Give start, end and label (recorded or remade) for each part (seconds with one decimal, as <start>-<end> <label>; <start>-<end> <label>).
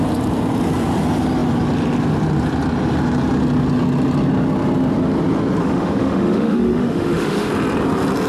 0.0-5.6 recorded; 5.6-7.5 remade; 7.5-8.3 recorded